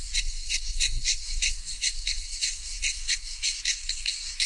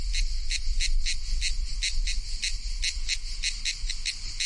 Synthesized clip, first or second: first